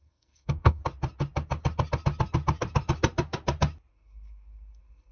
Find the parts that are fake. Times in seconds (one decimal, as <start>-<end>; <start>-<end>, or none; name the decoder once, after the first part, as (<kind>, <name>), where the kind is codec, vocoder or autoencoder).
0.0-0.8 (codec, SNAC); 3.9-5.1